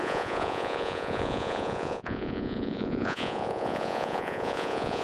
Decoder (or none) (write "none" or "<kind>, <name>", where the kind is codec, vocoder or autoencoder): vocoder, Vocos